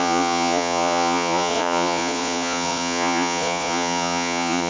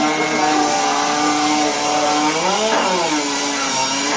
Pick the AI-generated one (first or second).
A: first